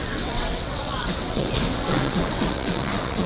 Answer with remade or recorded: remade